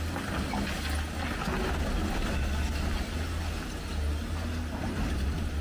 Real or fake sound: real